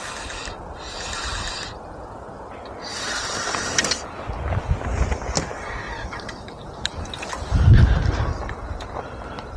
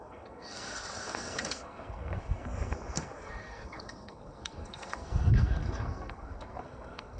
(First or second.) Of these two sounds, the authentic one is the first